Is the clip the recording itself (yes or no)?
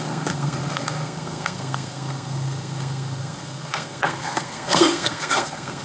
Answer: no